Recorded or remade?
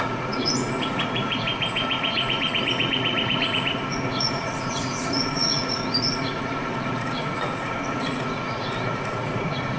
remade